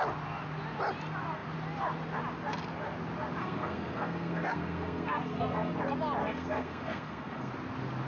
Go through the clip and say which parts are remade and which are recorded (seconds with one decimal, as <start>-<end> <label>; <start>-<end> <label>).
0.0-3.4 recorded; 3.4-5.7 remade; 5.7-6.2 recorded; 6.2-7.5 remade; 7.5-8.1 recorded